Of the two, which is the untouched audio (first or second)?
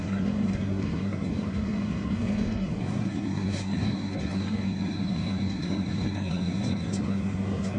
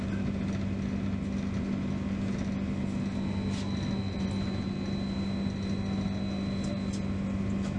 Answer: second